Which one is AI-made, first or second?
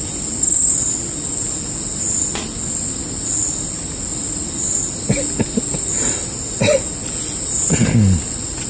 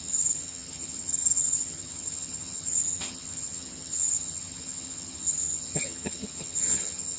second